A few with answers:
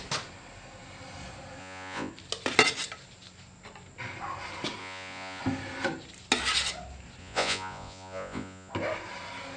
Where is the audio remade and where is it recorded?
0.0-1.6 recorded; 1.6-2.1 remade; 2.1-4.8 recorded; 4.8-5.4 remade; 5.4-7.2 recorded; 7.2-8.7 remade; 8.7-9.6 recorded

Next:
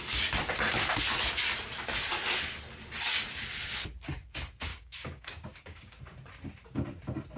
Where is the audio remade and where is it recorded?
0.0-4.7 recorded; 4.7-6.0 remade; 6.0-7.4 recorded

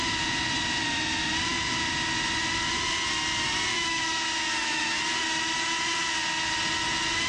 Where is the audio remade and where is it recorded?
0.0-3.7 recorded; 3.7-5.0 remade; 5.0-7.3 recorded

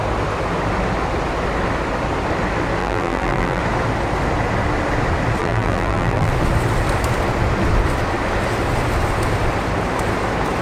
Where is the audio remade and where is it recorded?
0.0-2.8 recorded; 2.8-3.6 remade; 3.6-5.4 recorded; 5.4-6.3 remade; 6.3-10.6 recorded

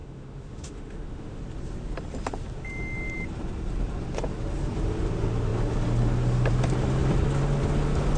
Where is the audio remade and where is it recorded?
0.0-1.4 remade; 1.4-8.2 recorded

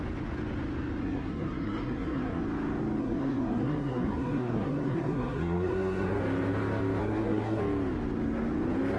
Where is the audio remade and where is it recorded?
0.0-1.0 recorded; 1.0-2.4 remade; 2.4-3.0 recorded; 3.0-6.2 remade; 6.2-7.0 recorded; 7.0-7.6 remade; 7.6-9.0 recorded

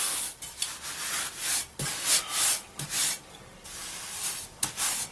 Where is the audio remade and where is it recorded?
0.0-5.1 recorded